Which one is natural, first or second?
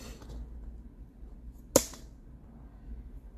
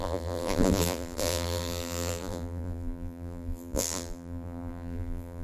first